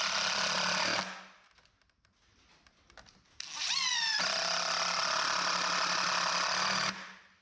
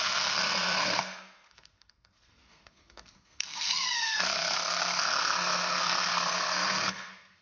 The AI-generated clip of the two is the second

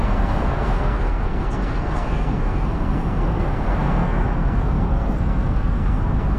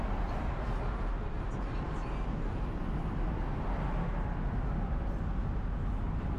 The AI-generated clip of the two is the first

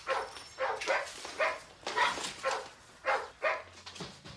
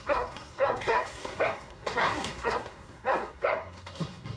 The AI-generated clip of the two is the second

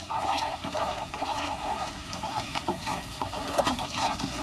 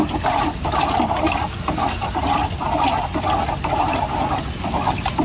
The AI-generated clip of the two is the first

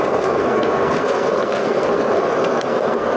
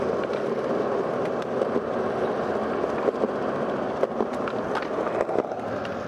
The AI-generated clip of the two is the first